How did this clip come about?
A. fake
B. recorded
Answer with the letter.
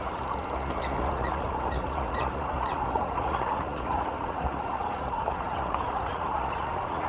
A